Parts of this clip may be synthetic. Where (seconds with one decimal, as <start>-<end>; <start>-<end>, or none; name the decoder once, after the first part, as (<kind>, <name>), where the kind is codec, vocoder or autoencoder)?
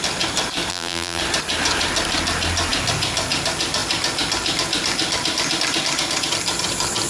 0.7-1.2 (vocoder, BigVGAN v2)